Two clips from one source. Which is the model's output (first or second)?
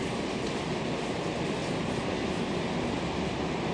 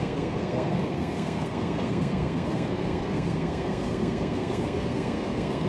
second